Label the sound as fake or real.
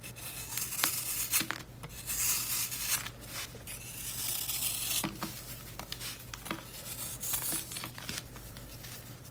real